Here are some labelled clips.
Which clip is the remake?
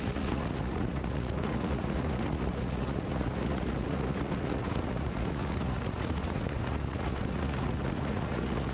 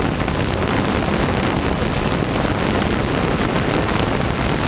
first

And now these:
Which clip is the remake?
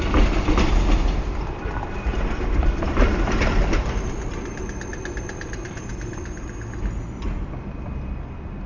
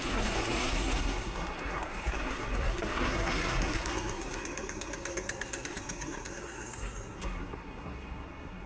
second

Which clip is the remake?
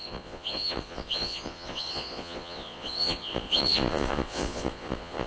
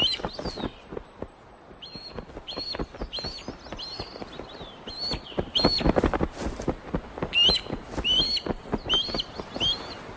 first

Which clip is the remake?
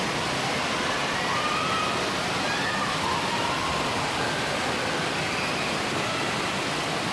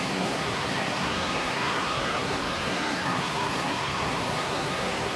second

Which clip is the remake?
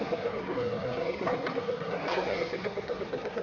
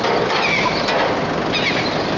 first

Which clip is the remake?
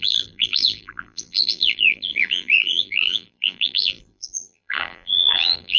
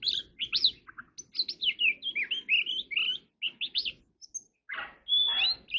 first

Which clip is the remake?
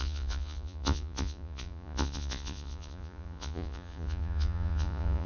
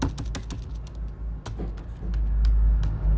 first